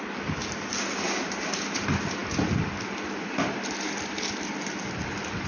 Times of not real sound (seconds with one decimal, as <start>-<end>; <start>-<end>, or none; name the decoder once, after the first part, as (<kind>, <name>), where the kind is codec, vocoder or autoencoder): 2.2-4.5 (vocoder, BigVGAN v2)